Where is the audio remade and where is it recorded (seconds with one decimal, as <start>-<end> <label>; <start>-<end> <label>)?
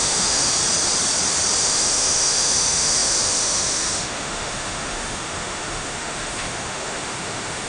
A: 0.0-0.5 remade; 0.5-1.6 recorded; 1.6-7.7 remade